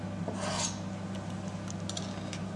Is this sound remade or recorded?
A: recorded